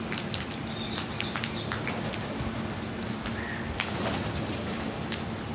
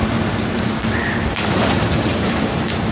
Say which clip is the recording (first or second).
first